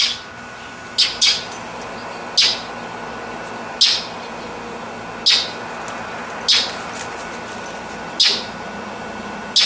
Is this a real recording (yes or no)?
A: yes